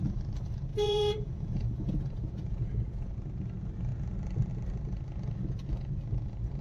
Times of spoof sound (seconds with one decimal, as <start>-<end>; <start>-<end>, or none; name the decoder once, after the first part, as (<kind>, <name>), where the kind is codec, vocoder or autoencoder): 0.7-3.1 (vocoder, Vocos)